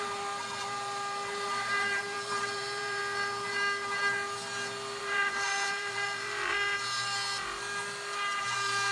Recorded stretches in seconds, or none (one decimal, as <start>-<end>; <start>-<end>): 3.0-5.0; 6.5-8.4